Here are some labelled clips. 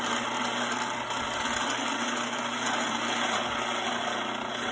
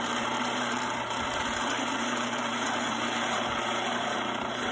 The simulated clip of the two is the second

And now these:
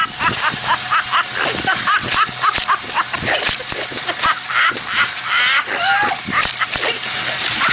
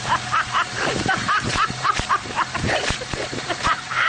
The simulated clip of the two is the second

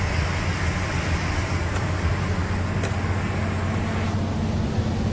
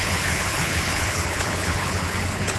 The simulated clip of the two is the second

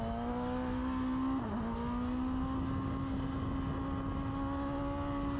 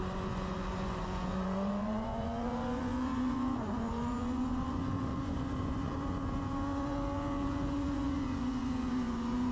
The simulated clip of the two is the second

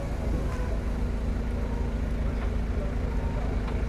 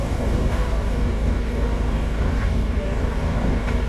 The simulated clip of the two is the second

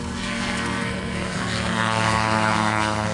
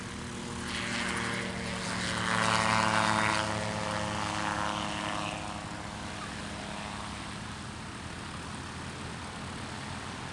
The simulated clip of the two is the first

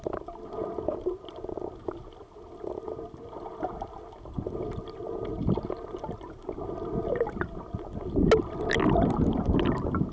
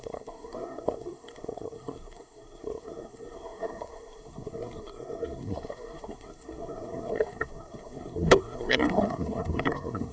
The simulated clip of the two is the second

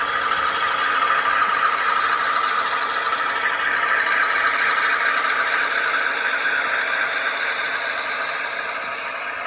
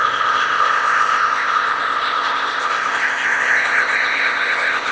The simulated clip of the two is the second